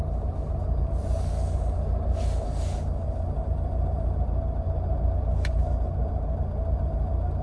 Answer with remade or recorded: recorded